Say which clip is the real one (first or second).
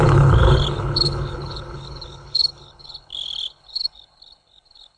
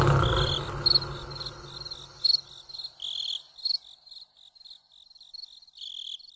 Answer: second